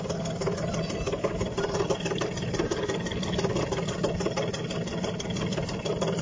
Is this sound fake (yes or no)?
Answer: no